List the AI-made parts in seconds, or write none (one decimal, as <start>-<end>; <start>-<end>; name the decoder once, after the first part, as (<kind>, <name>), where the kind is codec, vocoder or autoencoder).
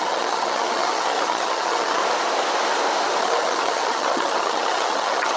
0.0-2.0 (vocoder, HiFi-GAN); 3.2-5.4